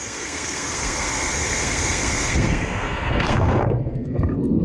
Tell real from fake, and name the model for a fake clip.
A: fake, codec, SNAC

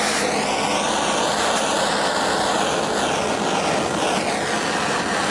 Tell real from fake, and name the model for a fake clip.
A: real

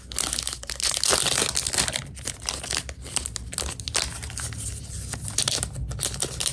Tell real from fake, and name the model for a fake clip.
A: real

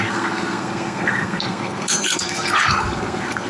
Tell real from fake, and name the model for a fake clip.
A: fake, codec, SNAC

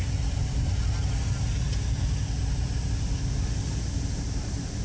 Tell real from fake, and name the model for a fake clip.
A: real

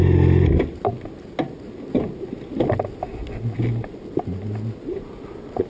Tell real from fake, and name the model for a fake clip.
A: real